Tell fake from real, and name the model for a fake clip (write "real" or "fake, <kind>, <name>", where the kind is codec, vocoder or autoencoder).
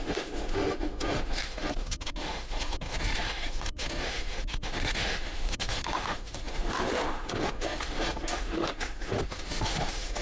fake, autoencoder, DAC-VAE